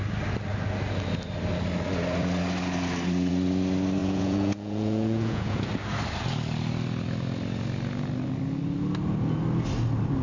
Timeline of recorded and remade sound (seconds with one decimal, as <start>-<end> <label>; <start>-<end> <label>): 0.0-4.0 recorded; 4.0-5.7 remade; 5.7-10.2 recorded